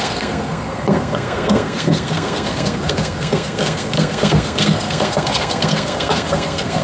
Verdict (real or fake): fake